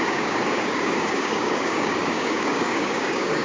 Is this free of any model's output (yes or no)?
no